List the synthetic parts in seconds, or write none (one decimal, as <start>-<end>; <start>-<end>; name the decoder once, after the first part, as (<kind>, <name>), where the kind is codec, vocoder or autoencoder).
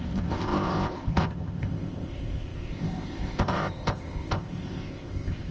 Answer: 0.0-5.5 (codec, ZipCodec)